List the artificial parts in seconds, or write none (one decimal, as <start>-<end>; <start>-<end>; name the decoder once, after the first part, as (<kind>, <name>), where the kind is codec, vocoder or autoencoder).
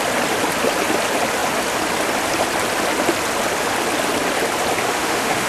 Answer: 4.8-5.5 (autoencoder, DAC-VAE)